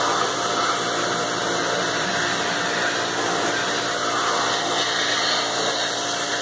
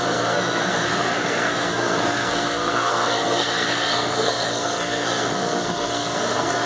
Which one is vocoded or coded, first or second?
second